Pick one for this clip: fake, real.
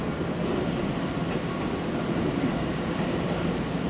real